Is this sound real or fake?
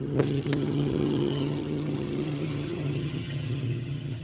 fake